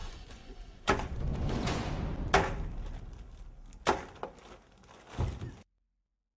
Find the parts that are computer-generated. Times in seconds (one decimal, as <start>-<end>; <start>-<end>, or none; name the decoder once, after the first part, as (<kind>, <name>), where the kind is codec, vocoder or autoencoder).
0.0-1.9 (vocoder, Vocos)